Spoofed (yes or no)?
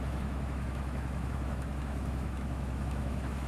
yes